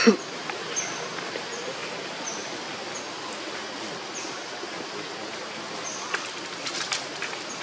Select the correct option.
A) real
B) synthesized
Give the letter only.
A